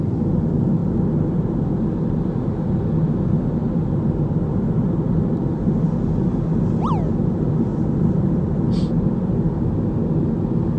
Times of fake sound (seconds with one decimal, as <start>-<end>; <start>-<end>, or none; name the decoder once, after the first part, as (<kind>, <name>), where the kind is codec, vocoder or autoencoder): 3.6-5.7 (vocoder, BigVGAN v2)